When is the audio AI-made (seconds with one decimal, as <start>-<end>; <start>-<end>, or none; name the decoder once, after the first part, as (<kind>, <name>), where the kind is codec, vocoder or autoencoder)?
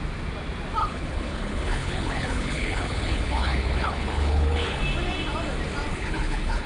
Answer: 0.8-4.8 (codec, HILCodec); 5.9-6.7